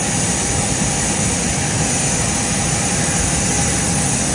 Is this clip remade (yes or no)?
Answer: no